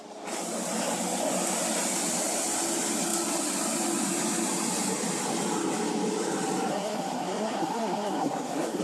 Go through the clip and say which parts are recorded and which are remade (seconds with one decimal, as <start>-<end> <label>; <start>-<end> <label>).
0.0-6.7 recorded; 6.7-8.8 remade